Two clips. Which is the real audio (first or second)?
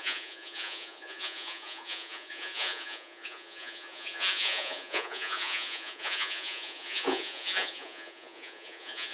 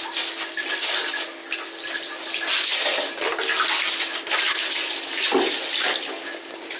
second